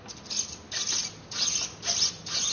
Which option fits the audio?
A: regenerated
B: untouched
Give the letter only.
B